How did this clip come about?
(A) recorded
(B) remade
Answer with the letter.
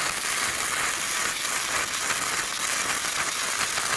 A